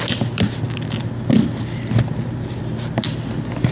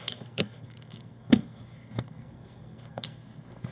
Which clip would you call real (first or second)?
first